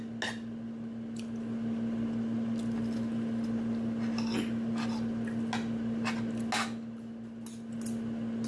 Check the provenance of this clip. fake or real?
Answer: real